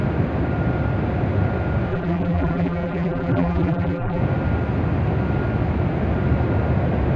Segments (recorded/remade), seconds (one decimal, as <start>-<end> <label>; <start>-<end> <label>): 0.0-1.9 recorded; 1.9-4.2 remade; 4.2-7.2 recorded